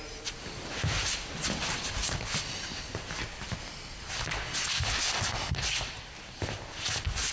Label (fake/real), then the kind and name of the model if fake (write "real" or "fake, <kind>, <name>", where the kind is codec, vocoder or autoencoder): real